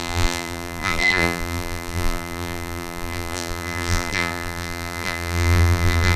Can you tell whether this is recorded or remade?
remade